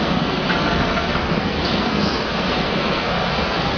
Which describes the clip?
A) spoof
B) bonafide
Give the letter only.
A